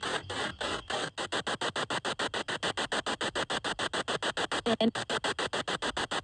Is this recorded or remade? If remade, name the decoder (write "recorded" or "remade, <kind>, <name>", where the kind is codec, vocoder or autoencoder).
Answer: recorded